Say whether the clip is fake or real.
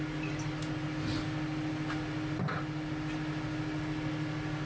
real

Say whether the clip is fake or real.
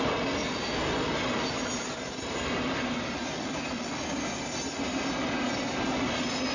real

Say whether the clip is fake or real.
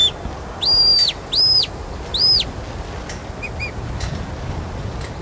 real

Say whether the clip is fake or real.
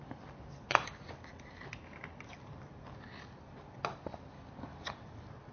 real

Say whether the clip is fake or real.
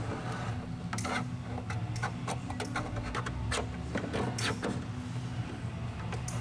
real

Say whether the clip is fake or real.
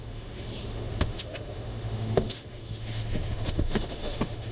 fake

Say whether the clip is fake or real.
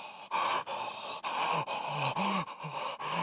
real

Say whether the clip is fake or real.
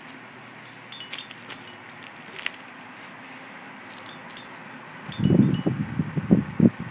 real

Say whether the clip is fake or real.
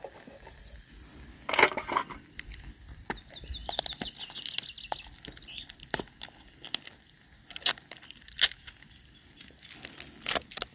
real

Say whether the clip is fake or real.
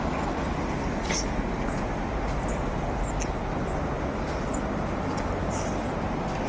real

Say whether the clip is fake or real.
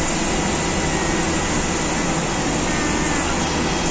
real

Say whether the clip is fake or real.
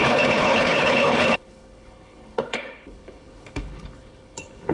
fake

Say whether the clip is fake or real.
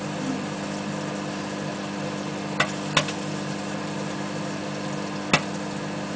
real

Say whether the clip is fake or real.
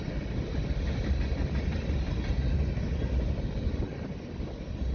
real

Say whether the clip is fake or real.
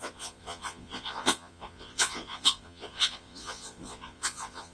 fake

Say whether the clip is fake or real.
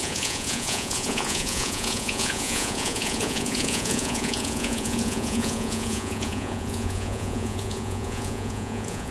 fake